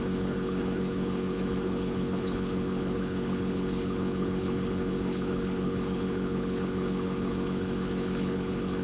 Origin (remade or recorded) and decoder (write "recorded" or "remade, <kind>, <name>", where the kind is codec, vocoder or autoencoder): remade, codec, HILCodec